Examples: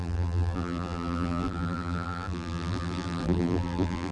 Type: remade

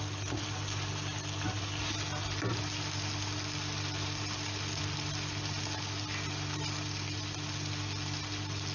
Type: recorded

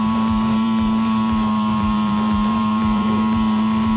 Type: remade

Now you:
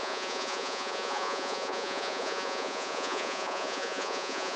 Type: remade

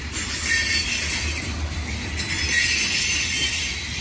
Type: recorded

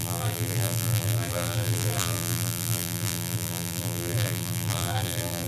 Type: remade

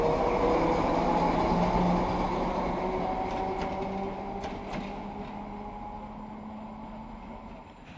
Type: recorded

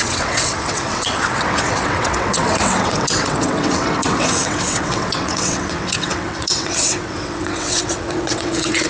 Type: remade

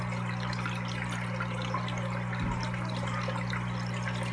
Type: recorded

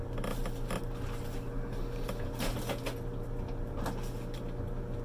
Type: recorded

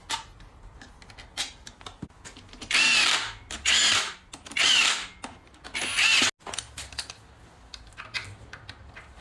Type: recorded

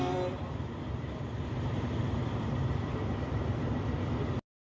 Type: remade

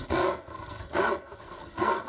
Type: remade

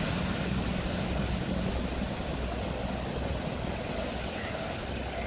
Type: recorded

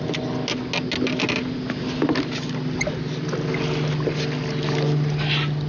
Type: recorded